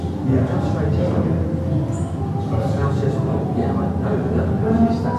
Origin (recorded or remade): recorded